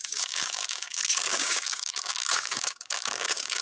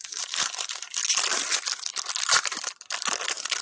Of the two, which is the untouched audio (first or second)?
second